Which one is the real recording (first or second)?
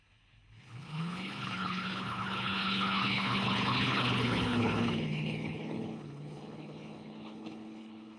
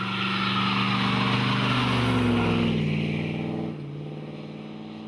second